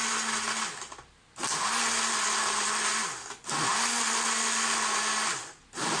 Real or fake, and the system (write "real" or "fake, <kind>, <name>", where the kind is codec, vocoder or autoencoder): real